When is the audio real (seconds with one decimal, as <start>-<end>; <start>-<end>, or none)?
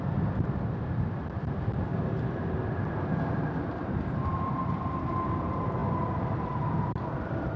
0.0-7.6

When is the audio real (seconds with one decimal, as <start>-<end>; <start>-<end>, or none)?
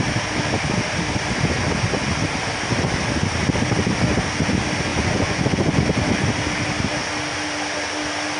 0.0-4.9; 5.8-8.4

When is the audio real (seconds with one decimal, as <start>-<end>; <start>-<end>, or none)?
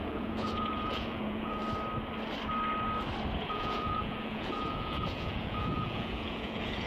1.6-3.4